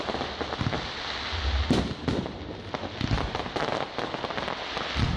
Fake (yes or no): no